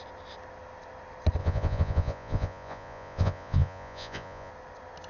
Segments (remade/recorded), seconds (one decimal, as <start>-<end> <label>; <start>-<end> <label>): 0.0-1.4 recorded; 1.4-4.5 remade; 4.5-5.1 recorded